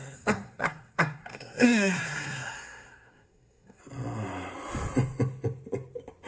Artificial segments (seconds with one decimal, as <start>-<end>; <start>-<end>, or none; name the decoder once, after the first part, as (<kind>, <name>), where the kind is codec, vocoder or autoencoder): 0.0-3.8 (codec, SNAC)